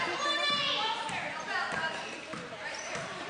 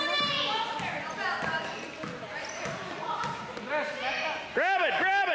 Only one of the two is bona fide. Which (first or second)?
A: second